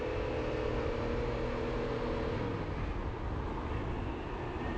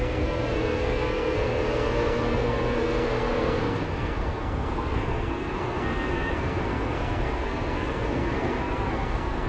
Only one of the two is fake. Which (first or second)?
second